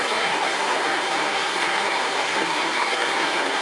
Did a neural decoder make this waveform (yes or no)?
yes